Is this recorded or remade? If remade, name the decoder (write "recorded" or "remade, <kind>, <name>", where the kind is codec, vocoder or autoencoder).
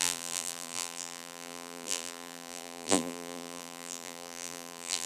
remade, vocoder, BigVGAN v2